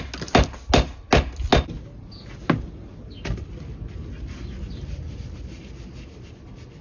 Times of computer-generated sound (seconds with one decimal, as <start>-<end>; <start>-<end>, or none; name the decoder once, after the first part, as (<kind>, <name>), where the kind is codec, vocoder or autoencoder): none